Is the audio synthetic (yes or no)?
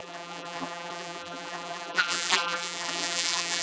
yes